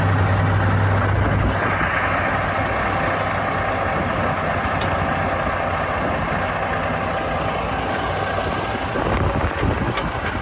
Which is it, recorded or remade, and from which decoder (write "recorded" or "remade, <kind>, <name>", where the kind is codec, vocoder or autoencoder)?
recorded